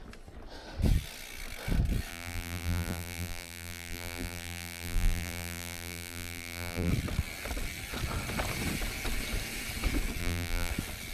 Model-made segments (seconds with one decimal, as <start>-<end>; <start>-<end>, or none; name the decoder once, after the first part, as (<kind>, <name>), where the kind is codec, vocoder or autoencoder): 2.1-6.9 (vocoder, BigVGAN v2); 10.2-10.7